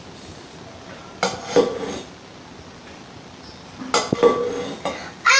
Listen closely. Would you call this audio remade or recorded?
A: recorded